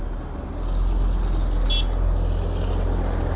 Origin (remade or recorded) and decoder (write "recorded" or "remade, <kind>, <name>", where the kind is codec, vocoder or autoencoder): recorded